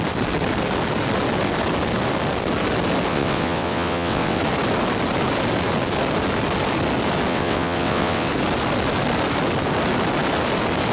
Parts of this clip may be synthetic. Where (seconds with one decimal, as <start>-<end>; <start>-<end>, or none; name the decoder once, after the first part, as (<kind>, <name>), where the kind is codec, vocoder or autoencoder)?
3.1-4.4 (vocoder, WaveNeXt); 7.3-8.3

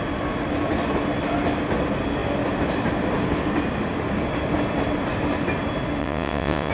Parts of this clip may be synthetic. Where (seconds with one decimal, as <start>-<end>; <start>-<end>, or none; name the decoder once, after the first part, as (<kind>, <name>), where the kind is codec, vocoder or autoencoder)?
6.0-6.7 (vocoder, WaveNeXt)

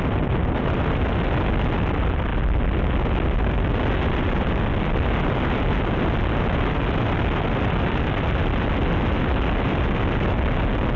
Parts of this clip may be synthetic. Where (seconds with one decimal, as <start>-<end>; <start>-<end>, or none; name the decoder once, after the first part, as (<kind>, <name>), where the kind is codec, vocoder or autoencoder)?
none

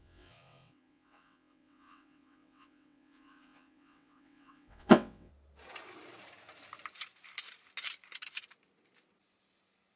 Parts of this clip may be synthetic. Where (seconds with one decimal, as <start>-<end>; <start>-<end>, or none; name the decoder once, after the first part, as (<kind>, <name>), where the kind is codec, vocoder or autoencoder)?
0.0-5.3 (vocoder, WaveNeXt)

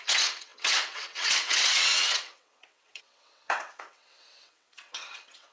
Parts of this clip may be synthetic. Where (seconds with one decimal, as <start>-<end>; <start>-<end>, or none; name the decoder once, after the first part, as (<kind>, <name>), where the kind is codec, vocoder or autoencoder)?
0.0-5.5 (vocoder, WaveNeXt)

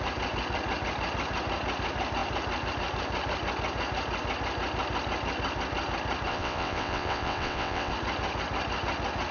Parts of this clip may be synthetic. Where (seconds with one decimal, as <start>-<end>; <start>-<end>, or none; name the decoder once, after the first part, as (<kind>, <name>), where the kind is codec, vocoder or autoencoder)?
6.3-7.9 (vocoder, WaveNeXt)

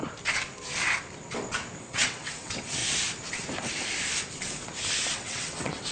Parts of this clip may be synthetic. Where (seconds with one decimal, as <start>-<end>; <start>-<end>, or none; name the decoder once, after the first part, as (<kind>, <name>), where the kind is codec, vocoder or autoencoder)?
1.8-2.8 (vocoder, WaveNeXt); 5.1-5.9

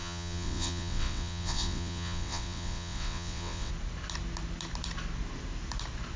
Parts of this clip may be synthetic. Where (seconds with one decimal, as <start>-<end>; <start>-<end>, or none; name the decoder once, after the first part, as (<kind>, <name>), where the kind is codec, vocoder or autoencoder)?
0.0-3.7 (vocoder, WaveNeXt)